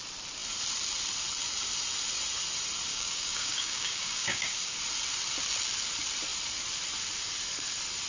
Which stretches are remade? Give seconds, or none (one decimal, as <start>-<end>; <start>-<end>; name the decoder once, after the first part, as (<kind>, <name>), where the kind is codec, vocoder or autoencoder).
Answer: 2.9-4.8 (codec, DAC)